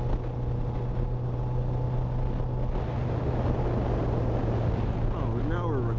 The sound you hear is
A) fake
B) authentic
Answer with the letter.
B